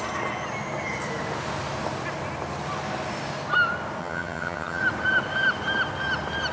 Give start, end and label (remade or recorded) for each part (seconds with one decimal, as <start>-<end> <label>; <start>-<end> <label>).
0.0-4.0 recorded; 4.0-4.8 remade; 4.8-6.5 recorded